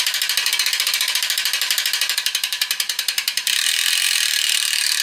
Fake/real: fake